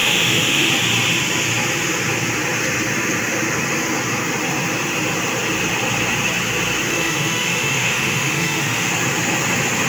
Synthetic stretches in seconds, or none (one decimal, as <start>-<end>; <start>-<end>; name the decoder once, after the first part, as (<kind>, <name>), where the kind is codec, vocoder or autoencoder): 0.0-0.7 (autoencoder, DAC-VAE); 6.9-8.9